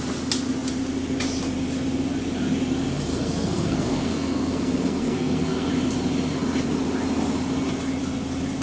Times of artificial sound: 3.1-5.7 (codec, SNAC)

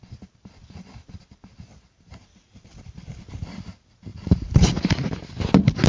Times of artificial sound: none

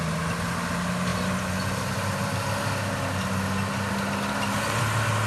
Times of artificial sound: none